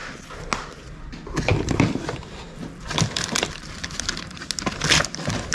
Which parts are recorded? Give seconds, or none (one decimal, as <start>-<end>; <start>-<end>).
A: 0.0-1.5; 4.5-5.5